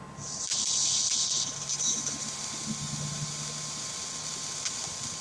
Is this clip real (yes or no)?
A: yes